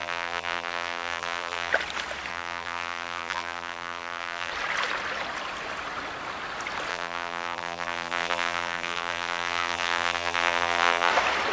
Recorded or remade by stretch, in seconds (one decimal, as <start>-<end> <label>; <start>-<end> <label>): 0.0-1.7 remade; 1.7-2.3 recorded; 2.3-4.5 remade; 4.5-6.9 recorded; 6.9-11.1 remade; 11.1-11.5 recorded